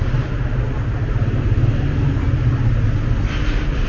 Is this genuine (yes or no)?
yes